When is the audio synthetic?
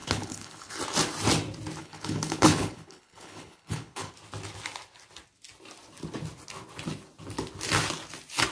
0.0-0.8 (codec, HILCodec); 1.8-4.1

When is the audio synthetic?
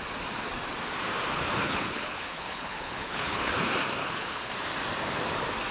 1.6-3.5 (codec, HILCodec); 4.0-4.5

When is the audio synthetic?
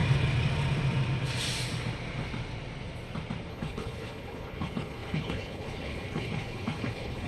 3.5-7.3 (codec, HILCodec)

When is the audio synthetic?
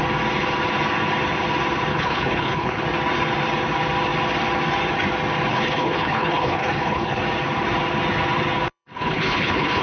1.9-2.8 (codec, HILCodec); 5.5-7.2; 8.7-9.8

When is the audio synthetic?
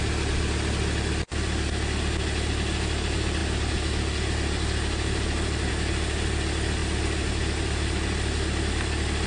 none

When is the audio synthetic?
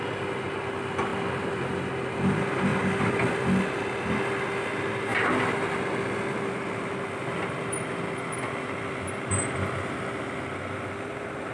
none